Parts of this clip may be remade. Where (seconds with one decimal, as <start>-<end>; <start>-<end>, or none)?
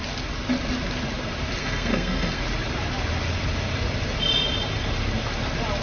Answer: 1.6-2.4